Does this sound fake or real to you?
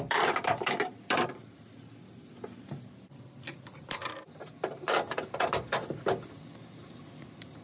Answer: real